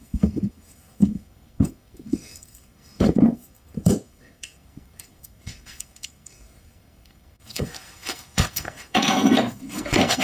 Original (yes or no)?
no